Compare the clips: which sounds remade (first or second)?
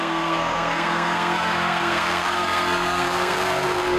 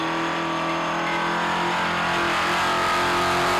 first